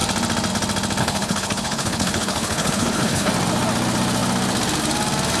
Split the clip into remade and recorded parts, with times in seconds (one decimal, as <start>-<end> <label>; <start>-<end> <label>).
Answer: 0.0-1.0 recorded; 1.0-3.3 remade; 3.3-5.4 recorded

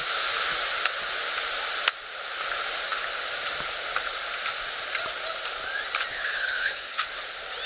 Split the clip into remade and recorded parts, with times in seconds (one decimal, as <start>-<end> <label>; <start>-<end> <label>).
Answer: 0.0-6.1 recorded; 6.1-7.1 remade; 7.1-7.7 recorded

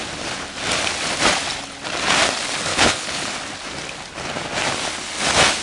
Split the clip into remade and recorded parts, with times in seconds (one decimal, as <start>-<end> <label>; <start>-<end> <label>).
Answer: 0.0-2.7 recorded; 2.7-3.3 remade; 3.3-5.6 recorded

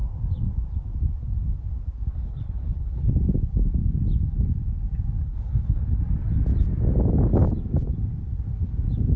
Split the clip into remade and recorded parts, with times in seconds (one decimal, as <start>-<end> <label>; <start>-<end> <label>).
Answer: 0.0-2.1 recorded; 2.1-3.1 remade; 3.1-5.2 recorded; 5.2-6.0 remade; 6.0-9.2 recorded